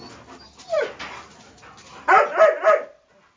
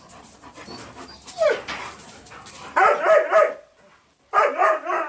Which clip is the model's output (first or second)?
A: second